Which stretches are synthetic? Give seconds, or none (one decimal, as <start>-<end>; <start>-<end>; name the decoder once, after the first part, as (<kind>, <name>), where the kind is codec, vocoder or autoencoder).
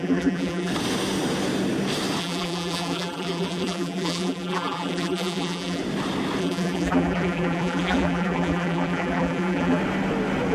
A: 0.0-0.7 (vocoder, BigVGAN v2); 2.2-5.8; 6.4-9.8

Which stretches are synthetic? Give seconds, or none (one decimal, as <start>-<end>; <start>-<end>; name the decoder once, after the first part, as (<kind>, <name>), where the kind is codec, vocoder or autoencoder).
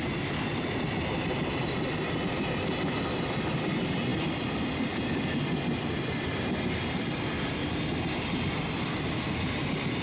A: none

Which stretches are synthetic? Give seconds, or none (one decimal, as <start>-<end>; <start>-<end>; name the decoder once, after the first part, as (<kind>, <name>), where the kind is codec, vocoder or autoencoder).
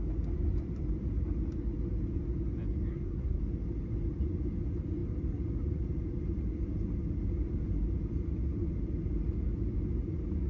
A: 2.9-3.4 (codec, SNAC)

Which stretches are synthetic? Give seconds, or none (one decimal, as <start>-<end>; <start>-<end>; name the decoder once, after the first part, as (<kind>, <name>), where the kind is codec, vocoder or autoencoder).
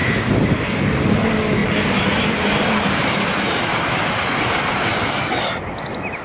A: 1.6-5.3 (vocoder, BigVGAN v2)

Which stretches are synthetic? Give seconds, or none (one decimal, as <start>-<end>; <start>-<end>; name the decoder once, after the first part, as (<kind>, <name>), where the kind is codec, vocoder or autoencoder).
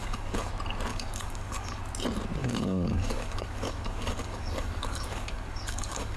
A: 0.0-0.5 (codec, DAC); 0.9-1.8; 2.4-6.2